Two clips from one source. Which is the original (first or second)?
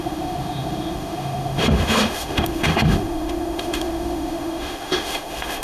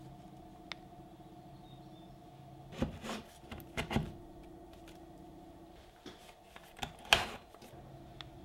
second